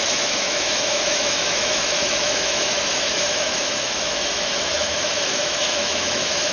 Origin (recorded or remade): remade